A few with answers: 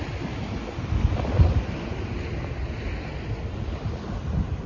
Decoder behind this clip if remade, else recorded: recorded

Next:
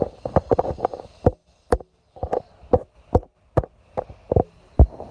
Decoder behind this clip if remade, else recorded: recorded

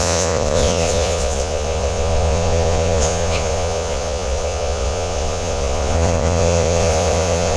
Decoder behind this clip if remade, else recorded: remade, vocoder, Vocos